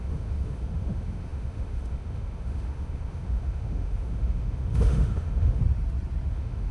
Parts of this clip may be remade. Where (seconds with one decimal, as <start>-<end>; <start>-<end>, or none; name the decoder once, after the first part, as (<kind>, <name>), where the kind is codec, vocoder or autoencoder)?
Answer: 0.0-5.6 (autoencoder, DAC-VAE); 6.3-6.7